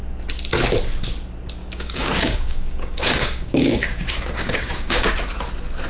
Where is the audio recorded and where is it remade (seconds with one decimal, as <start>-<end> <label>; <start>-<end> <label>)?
0.0-1.6 recorded; 1.6-5.1 remade; 5.1-5.9 recorded